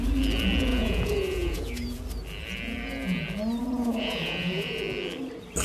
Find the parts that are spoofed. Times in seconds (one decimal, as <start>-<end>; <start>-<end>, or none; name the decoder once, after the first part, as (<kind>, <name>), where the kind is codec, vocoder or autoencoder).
0.7-2.0 (vocoder, Vocos); 3.6-4.8